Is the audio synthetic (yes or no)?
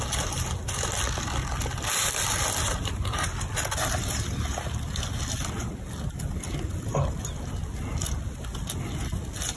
no